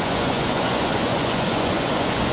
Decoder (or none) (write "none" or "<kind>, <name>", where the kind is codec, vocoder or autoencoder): vocoder, Vocos